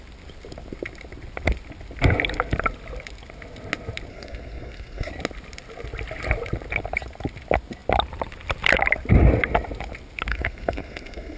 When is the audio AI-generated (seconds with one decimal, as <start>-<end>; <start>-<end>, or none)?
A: 4.1-5.1; 10.3-11.4